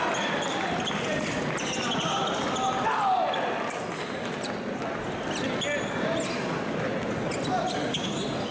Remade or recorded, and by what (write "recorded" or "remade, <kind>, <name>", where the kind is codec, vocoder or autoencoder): recorded